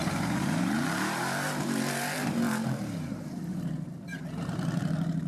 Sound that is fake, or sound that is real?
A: fake